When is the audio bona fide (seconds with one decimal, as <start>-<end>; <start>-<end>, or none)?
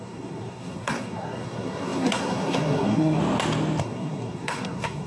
3.2-3.8